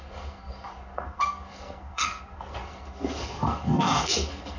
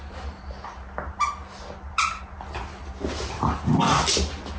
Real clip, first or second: second